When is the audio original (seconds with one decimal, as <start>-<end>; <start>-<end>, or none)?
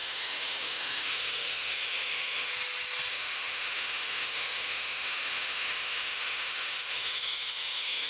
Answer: 2.5-3.1